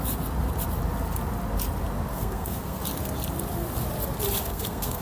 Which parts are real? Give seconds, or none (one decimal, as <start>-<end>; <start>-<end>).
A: 0.0-2.1; 2.8-4.4